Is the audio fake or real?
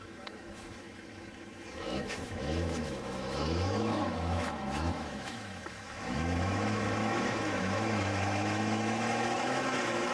fake